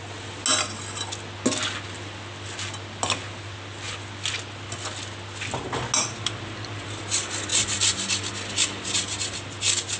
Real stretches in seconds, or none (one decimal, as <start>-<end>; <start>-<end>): 0.0-10.0